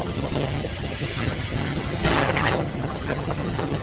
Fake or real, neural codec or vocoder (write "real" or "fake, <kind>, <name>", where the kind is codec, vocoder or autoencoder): fake, vocoder, HiFi-GAN